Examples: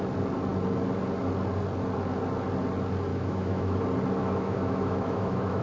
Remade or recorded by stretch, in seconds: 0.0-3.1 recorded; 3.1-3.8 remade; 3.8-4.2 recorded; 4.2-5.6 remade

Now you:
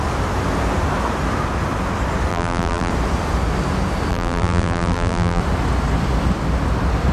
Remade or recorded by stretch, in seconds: 0.0-2.3 recorded; 2.3-2.9 remade; 2.9-4.1 recorded; 4.1-5.4 remade; 5.4-7.1 recorded

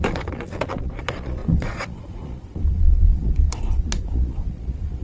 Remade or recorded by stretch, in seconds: 0.0-5.0 remade

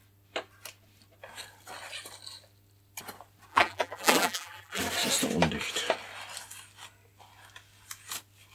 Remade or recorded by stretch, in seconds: 0.0-3.5 recorded; 3.5-4.8 remade; 4.8-8.5 recorded

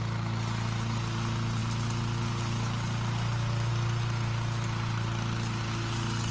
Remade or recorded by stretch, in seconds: 0.0-6.3 recorded

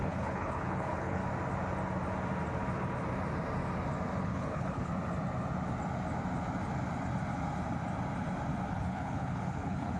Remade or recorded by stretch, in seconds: 0.0-1.2 remade; 1.2-4.2 recorded; 4.2-4.9 remade; 4.9-8.7 recorded; 8.7-10.0 remade

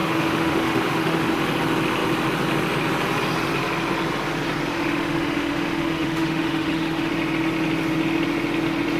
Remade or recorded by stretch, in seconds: 0.0-1.3 remade; 1.3-4.7 recorded; 4.7-7.1 remade; 7.1-9.0 recorded

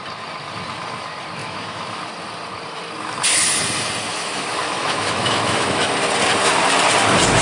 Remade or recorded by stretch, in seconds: 0.0-1.4 recorded; 1.4-2.0 remade; 2.0-4.1 recorded; 4.1-5.9 remade; 5.9-7.4 recorded